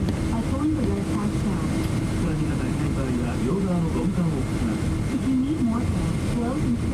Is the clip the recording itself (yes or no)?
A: yes